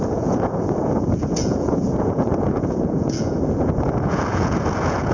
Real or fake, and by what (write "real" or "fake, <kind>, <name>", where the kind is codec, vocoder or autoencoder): fake, vocoder, Vocos